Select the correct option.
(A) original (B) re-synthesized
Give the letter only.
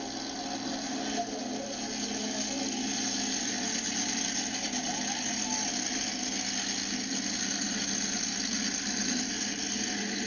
A